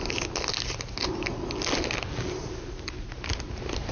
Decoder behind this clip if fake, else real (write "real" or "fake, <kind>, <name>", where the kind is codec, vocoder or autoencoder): real